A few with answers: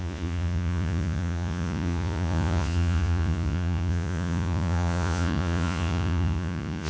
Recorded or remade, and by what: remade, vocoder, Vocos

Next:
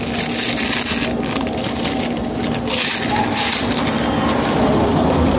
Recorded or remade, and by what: recorded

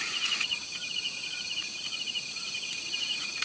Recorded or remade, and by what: remade, vocoder, Vocos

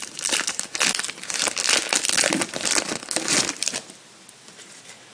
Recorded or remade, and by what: recorded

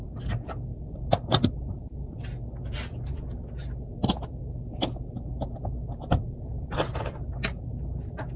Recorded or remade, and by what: recorded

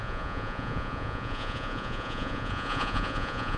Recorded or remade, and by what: remade, vocoder, Vocos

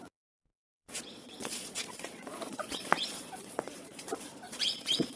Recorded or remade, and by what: remade, vocoder, Vocos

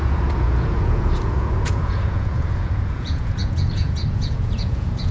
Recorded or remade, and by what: remade, vocoder, Vocos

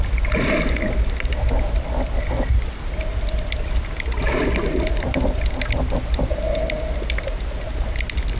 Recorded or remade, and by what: recorded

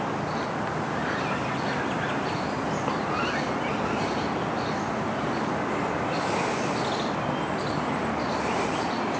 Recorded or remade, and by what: recorded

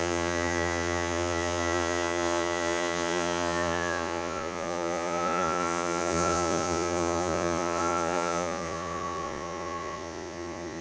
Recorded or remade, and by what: remade, vocoder, Vocos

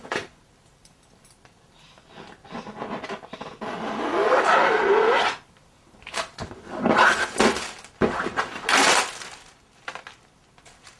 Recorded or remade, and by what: recorded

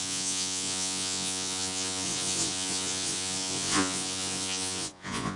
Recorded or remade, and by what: remade, vocoder, Vocos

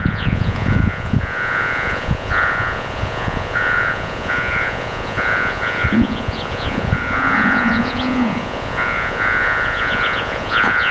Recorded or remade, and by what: remade, vocoder, Vocos